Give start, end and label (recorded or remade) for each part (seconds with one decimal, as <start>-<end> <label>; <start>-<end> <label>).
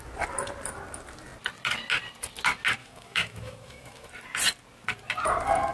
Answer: 0.0-2.8 recorded; 2.8-4.1 remade; 4.1-5.7 recorded